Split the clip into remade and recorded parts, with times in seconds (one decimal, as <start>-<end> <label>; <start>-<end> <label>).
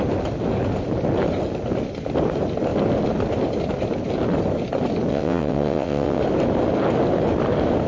0.0-5.1 recorded; 5.1-6.2 remade; 6.2-7.9 recorded